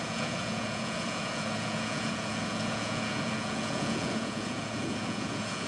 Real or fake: fake